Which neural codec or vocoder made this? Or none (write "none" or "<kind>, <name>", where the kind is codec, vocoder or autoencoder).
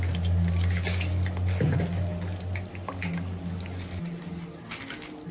none